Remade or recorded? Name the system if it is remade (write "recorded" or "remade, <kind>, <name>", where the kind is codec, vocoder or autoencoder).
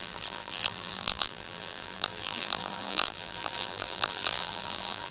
remade, vocoder, BigVGAN v2